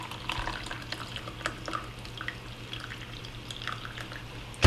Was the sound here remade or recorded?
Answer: recorded